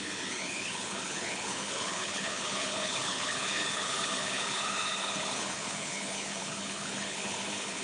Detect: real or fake fake